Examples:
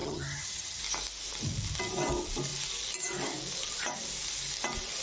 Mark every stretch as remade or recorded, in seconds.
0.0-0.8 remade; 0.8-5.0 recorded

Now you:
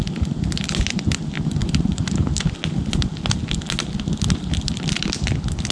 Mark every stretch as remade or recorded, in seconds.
0.0-5.7 recorded